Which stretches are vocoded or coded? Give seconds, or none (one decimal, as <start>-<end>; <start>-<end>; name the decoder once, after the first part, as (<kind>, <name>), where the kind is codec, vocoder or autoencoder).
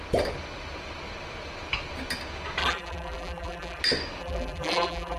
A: 2.6-3.8 (vocoder, BigVGAN v2); 4.2-5.2